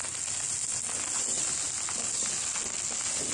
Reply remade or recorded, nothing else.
recorded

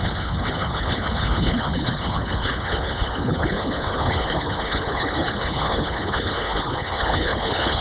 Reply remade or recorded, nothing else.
remade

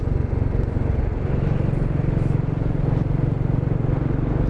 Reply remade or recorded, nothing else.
recorded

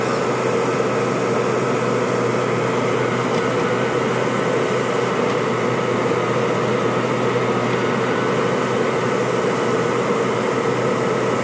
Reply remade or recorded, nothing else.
recorded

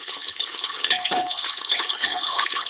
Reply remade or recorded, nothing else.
remade